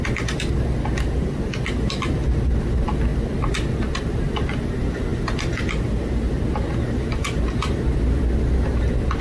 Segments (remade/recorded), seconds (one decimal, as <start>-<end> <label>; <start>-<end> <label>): 0.0-9.2 recorded